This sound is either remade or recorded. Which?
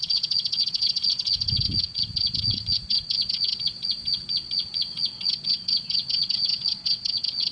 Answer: remade